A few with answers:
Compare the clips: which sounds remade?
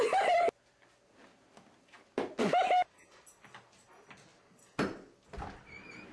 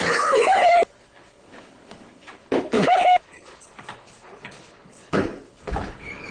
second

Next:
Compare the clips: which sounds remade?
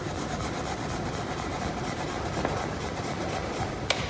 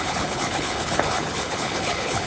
second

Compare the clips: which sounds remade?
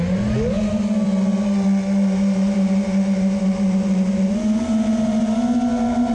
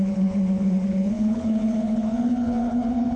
second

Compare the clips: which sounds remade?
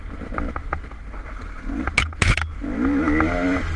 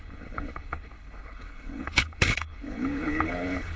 second